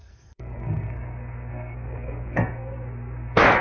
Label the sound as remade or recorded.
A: remade